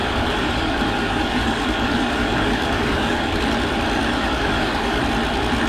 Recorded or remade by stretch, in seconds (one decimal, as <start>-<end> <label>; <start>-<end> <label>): 0.0-3.4 remade; 3.4-4.0 recorded; 4.0-5.0 remade; 5.0-5.7 recorded